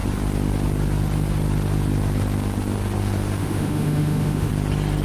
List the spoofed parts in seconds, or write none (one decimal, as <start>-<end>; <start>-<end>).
3.4-4.5